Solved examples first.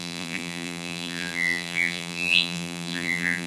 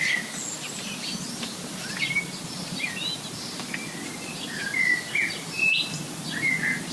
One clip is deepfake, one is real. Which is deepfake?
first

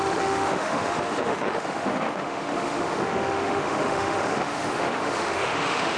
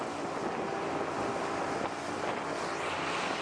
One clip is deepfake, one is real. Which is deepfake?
first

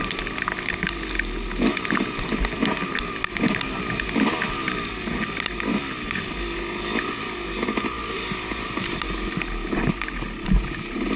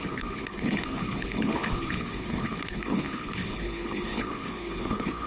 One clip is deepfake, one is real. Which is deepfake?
second